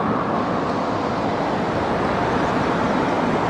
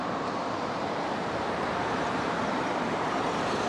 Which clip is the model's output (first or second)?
second